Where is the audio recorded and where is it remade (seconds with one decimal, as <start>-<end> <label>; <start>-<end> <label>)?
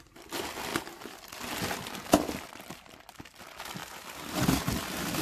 0.0-0.7 remade; 0.7-2.5 recorded; 2.5-3.8 remade; 3.8-4.8 recorded; 4.8-5.2 remade